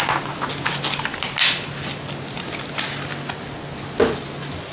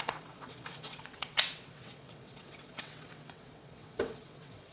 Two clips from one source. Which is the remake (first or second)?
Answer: second